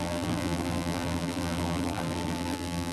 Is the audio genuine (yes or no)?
no